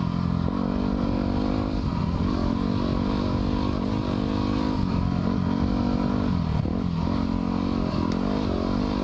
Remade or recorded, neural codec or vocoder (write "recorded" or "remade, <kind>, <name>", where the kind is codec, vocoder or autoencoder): recorded